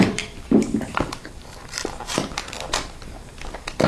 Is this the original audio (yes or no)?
no